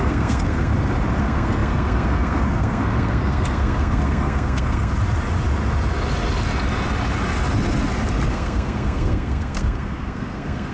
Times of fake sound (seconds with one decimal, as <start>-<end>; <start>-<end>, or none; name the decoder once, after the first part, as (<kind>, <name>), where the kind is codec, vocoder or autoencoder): 0.0-0.7 (codec, SNAC); 1.2-4.9; 8.3-10.7